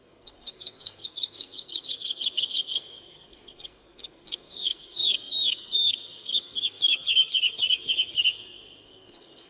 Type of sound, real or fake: fake